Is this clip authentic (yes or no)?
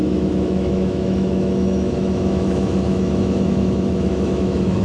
no